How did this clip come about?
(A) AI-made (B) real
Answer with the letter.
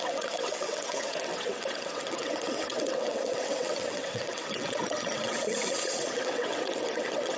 A